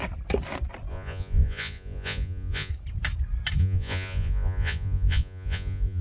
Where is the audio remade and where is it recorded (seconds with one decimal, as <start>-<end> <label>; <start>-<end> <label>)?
0.0-0.9 recorded; 0.9-2.7 remade; 2.7-3.6 recorded; 3.6-6.0 remade